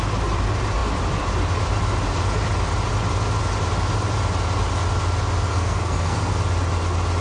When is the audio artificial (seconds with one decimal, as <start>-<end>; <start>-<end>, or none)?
5.5-6.3